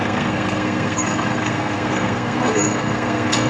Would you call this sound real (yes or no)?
no